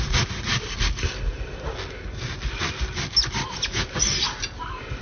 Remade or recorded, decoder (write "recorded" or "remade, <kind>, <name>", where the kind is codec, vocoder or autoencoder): recorded